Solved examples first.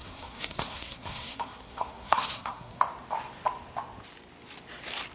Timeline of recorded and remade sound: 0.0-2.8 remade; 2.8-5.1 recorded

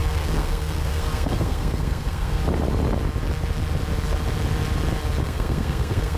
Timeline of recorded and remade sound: 0.0-2.4 remade; 2.4-5.2 recorded; 5.2-6.2 remade

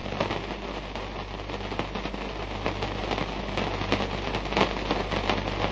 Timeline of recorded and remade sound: 0.0-5.7 recorded

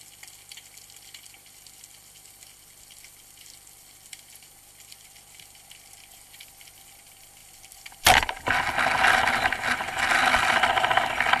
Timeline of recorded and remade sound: 0.0-11.4 recorded

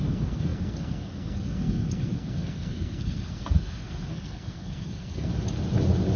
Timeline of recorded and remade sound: 0.0-5.3 remade; 5.3-6.2 recorded

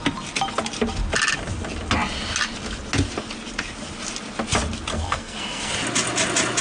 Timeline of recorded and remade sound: 0.0-4.9 recorded; 4.9-5.7 remade; 5.7-6.6 recorded

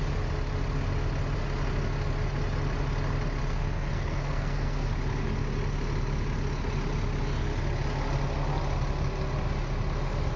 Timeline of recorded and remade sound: 0.0-3.5 recorded; 3.5-4.9 remade; 4.9-10.4 recorded

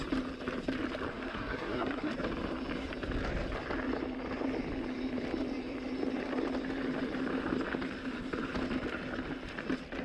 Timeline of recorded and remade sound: 0.0-1.1 recorded; 1.1-2.1 remade; 2.1-10.0 recorded